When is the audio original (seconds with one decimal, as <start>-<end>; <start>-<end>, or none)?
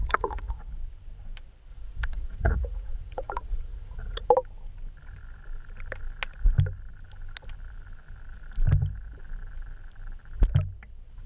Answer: 0.5-1.7; 4.3-11.3